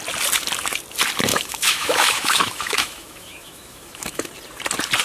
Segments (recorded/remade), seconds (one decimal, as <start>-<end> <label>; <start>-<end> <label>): 0.0-1.3 recorded; 1.3-4.3 remade; 4.3-5.0 recorded